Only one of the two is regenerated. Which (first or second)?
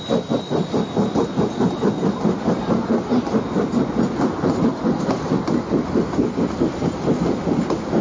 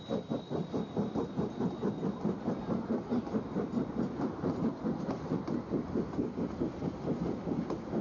second